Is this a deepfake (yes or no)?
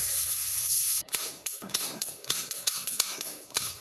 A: yes